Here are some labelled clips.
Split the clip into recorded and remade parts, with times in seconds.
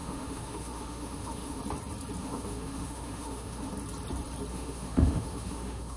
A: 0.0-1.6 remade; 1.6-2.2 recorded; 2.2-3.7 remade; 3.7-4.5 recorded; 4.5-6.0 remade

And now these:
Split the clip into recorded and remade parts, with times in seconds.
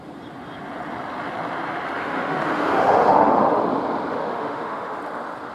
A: 0.0-2.0 recorded; 2.0-3.6 remade; 3.6-4.1 recorded; 4.1-5.0 remade; 5.0-5.5 recorded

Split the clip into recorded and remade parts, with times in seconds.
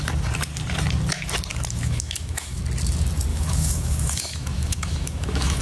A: 0.0-1.5 recorded; 1.5-2.6 remade; 2.6-3.3 recorded; 3.3-5.6 remade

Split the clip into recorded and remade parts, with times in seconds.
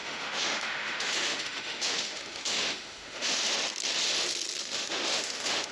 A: 0.0-3.4 remade; 3.4-4.6 recorded; 4.6-5.7 remade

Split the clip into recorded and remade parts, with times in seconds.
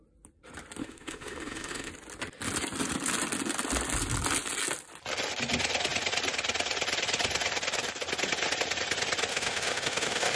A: 0.0-0.8 recorded; 0.8-1.9 remade; 1.9-9.3 recorded; 9.3-10.4 remade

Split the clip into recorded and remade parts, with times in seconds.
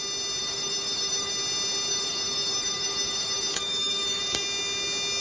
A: 0.0-0.4 recorded; 0.4-1.3 remade; 1.3-1.9 recorded; 1.9-4.2 remade; 4.2-5.2 recorded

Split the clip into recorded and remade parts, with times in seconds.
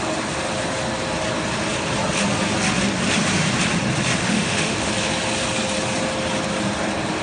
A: 0.0-4.2 recorded; 4.2-4.9 remade; 4.9-7.2 recorded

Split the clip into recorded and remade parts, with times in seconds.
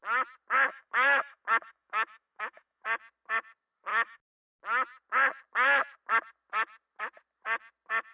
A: 0.0-0.7 recorded; 0.7-2.8 remade; 2.8-3.9 recorded; 3.9-4.5 remade; 4.5-8.1 recorded